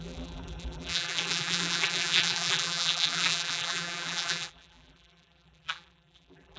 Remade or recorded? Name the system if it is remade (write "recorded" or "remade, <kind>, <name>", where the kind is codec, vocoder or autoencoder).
remade, vocoder, BigVGAN v2